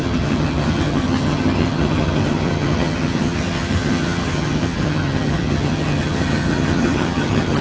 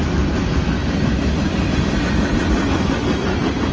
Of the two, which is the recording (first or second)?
second